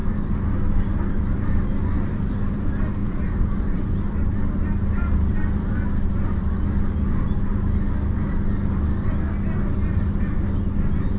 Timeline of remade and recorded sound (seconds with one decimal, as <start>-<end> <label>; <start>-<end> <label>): 0.0-1.0 remade; 1.0-3.0 recorded; 3.0-4.1 remade; 4.1-11.2 recorded